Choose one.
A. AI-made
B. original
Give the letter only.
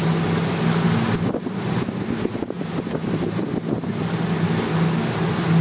B